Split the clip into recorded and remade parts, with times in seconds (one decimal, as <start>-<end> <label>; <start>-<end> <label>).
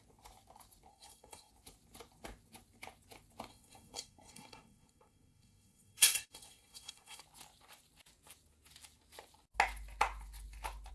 0.0-0.9 recorded; 0.9-1.5 remade; 1.5-3.5 recorded; 3.5-7.2 remade; 7.2-10.9 recorded